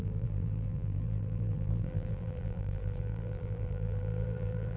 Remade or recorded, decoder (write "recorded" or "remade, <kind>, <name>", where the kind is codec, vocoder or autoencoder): remade, vocoder, BigVGAN v2